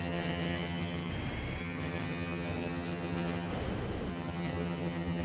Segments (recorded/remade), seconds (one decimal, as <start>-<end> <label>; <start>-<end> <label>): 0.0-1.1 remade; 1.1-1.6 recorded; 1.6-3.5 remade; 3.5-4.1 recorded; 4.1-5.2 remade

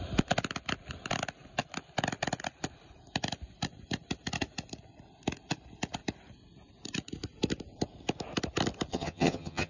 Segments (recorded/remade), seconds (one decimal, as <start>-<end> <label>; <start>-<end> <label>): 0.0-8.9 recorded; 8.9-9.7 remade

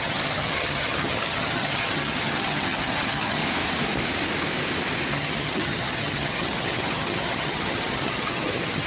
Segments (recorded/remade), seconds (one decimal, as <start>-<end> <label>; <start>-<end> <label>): 0.0-3.4 remade; 3.4-5.1 recorded; 5.1-8.9 remade

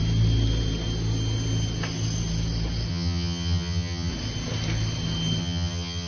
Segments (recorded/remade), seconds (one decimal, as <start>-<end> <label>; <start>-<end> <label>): 0.0-2.9 recorded; 2.9-4.1 remade; 4.1-5.4 recorded; 5.4-6.1 remade

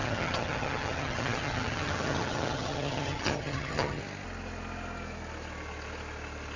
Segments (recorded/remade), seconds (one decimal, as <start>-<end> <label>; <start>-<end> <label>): 0.0-4.0 remade; 4.0-6.6 recorded

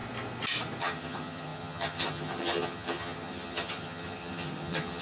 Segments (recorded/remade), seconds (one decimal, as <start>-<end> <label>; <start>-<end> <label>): 0.0-0.8 recorded; 0.8-5.0 remade

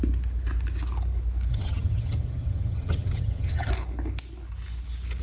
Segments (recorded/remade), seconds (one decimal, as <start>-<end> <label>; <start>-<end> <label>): 0.0-1.5 recorded; 1.5-3.7 remade; 3.7-5.2 recorded

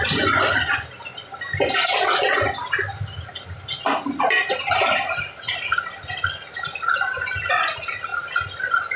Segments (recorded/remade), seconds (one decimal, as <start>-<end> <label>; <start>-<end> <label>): 0.0-9.0 recorded